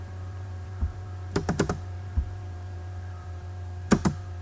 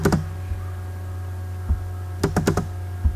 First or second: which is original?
second